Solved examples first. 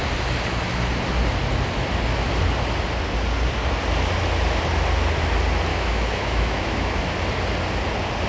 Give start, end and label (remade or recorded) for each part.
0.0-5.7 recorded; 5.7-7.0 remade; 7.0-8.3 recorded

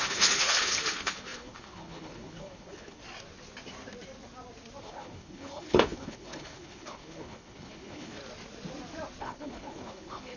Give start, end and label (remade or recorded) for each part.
0.0-3.0 remade; 3.0-4.8 recorded; 4.8-8.2 remade; 8.2-9.2 recorded; 9.2-10.4 remade

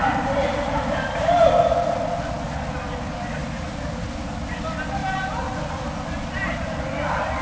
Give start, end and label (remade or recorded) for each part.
0.0-1.5 remade; 1.5-3.4 recorded; 3.4-4.3 remade; 4.3-7.4 recorded

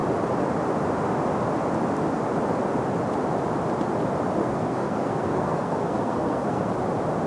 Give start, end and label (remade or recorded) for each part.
0.0-4.4 recorded; 4.4-6.7 remade; 6.7-7.3 recorded

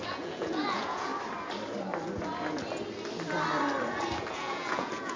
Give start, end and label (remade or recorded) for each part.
0.0-1.1 remade; 1.1-4.2 recorded; 4.2-5.2 remade

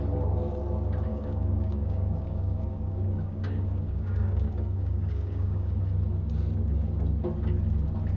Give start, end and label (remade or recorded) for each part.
0.0-1.1 recorded; 1.1-5.8 remade; 5.8-8.2 recorded